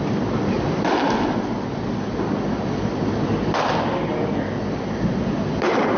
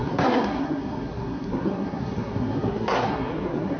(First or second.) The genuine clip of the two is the first